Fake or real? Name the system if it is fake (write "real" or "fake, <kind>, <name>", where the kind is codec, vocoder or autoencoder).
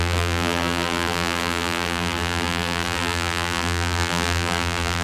fake, vocoder, BigVGAN v2